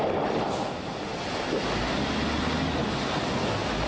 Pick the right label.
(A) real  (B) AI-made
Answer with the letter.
A